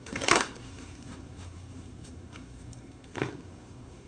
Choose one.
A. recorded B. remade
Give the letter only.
B